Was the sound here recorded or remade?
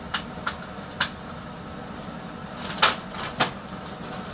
recorded